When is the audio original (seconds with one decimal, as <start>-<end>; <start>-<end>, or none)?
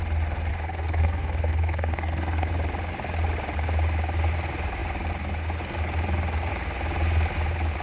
0.0-0.5; 2.5-7.8